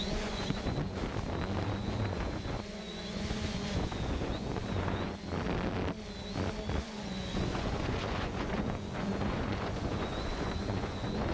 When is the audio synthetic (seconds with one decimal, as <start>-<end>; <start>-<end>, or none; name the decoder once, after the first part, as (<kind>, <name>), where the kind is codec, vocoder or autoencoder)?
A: 0.0-1.0 (vocoder, Vocos); 1.7-5.2; 6.8-11.3